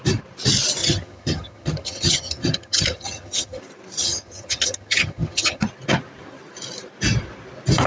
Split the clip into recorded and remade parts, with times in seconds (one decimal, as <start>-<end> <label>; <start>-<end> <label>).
0.0-0.8 recorded; 0.8-3.6 remade; 3.6-4.0 recorded; 4.0-5.6 remade; 5.6-7.9 recorded